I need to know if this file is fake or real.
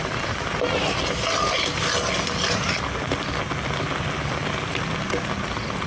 real